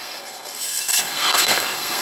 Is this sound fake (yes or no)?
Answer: yes